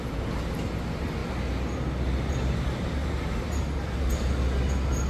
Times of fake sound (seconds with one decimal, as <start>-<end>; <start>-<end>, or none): none